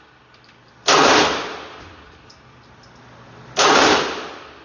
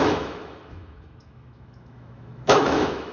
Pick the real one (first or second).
first